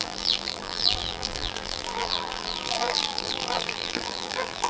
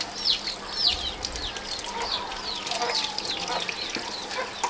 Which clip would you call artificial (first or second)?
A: first